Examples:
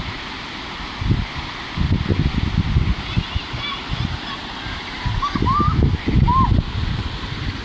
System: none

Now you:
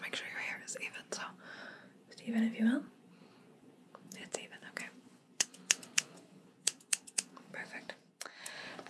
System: vocoder, Vocos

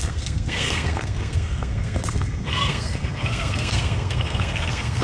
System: codec, SNAC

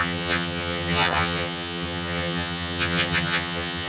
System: vocoder, HiFi-GAN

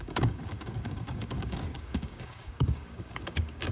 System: codec, DAC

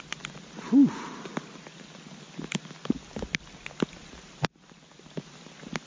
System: none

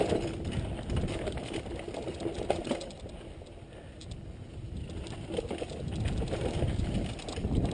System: none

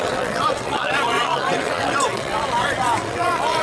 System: vocoder, WaveNeXt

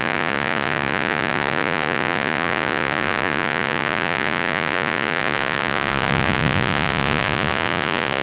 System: vocoder, Vocos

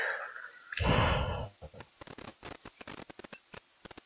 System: none